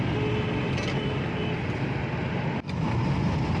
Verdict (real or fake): real